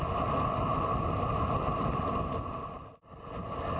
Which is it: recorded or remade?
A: recorded